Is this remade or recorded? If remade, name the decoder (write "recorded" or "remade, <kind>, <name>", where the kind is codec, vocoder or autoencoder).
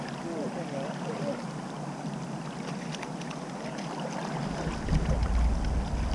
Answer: recorded